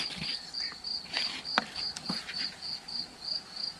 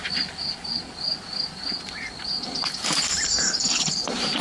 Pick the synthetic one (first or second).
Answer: second